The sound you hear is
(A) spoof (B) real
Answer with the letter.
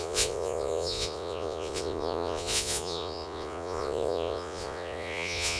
A